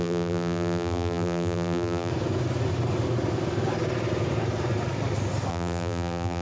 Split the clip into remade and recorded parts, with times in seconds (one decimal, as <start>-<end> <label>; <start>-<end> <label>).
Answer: 0.0-2.1 remade; 2.1-5.5 recorded; 5.5-6.4 remade